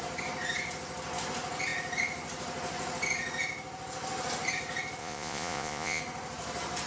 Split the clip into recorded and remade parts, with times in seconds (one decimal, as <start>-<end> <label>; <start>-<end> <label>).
0.0-5.0 recorded; 5.0-6.0 remade; 6.0-6.9 recorded

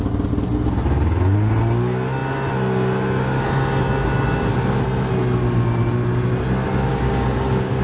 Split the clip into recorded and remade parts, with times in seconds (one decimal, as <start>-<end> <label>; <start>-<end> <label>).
0.0-6.9 recorded; 6.9-7.8 remade